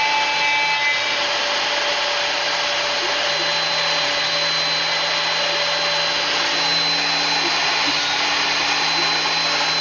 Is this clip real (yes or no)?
yes